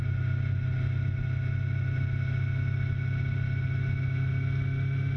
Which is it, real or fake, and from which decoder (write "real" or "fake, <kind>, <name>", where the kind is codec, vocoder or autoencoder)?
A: real